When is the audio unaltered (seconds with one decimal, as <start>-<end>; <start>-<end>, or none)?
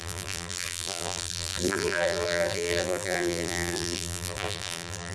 none